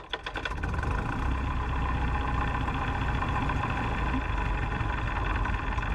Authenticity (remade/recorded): recorded